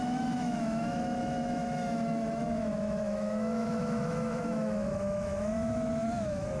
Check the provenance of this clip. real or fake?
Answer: fake